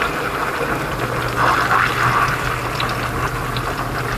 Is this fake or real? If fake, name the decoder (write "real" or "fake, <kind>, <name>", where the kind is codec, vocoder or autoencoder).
real